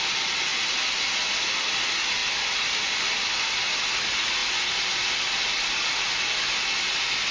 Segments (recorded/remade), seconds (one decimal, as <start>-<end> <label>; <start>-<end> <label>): 0.0-7.3 recorded